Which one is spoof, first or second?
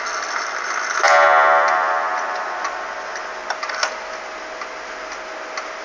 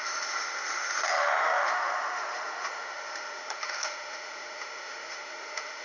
second